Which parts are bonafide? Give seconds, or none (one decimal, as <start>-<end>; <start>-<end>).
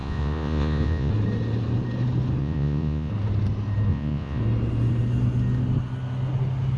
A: 1.1-2.4; 3.1-3.9; 4.4-6.8